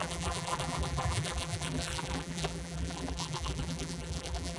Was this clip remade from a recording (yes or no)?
yes